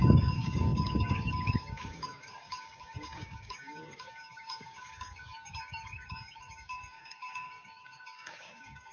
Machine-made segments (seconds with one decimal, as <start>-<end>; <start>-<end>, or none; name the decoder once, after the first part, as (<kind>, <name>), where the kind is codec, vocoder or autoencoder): 0.0-8.9 (codec, DAC)